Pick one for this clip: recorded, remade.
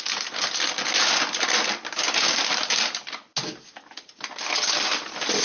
recorded